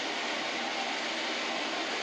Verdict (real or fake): real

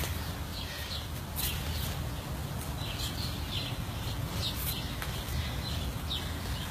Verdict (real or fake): real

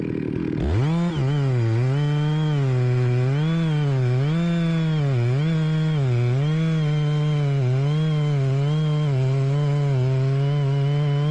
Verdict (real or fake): real